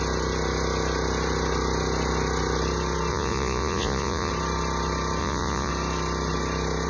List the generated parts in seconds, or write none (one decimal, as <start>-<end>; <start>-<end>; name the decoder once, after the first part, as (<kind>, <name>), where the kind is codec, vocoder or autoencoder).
3.1-4.3 (vocoder, Vocos); 5.2-5.7